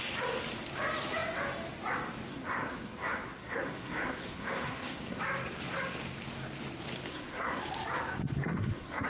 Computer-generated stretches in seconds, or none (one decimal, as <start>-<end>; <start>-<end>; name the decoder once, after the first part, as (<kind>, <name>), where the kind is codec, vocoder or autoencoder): 2.3-5.2 (codec, SNAC); 7.1-7.6; 8.4-9.1